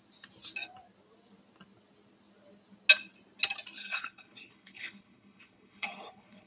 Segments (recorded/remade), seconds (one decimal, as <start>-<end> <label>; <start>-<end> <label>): 0.0-3.8 recorded; 3.8-6.5 remade

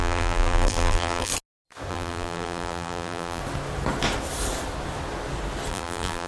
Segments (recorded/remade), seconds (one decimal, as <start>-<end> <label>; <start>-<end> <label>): 0.0-1.3 remade; 1.3-1.9 recorded; 1.9-3.4 remade; 3.4-5.7 recorded; 5.7-6.3 remade